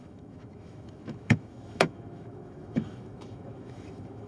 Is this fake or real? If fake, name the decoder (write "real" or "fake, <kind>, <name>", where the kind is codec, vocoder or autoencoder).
fake, autoencoder, DAC-VAE